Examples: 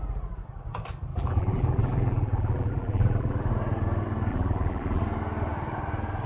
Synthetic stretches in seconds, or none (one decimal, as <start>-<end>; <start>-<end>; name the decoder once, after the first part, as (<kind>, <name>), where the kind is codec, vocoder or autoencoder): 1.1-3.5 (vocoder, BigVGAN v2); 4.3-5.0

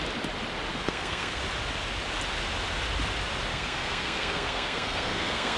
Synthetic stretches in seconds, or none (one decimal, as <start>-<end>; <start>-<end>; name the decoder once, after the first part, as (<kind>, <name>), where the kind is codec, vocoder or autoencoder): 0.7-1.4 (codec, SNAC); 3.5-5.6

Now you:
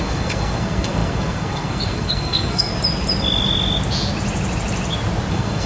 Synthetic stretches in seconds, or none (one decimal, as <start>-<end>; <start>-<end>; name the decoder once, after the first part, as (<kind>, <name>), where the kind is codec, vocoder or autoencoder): 0.0-2.7 (codec, SNAC); 5.3-5.7

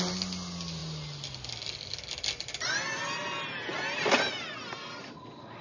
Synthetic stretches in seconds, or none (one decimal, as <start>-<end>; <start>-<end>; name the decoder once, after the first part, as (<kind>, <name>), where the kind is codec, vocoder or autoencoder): none

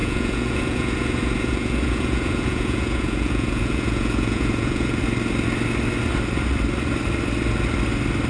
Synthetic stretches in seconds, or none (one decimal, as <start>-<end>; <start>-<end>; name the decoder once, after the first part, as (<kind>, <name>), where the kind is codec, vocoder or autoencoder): 0.0-5.0 (vocoder, Vocos)

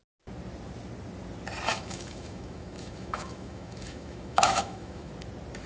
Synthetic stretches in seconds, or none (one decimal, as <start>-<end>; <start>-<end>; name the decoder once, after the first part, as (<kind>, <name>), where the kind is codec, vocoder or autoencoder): 1.7-5.1 (autoencoder, DAC-VAE)

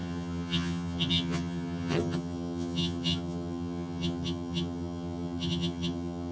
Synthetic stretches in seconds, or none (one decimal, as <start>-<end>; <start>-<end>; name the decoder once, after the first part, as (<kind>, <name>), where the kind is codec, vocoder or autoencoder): 0.0-6.3 (vocoder, HiFi-GAN)

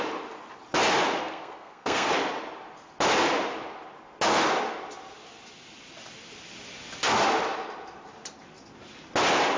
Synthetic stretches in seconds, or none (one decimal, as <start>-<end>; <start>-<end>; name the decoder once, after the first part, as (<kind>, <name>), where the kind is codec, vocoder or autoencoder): 1.2-2.1 (codec, SNAC)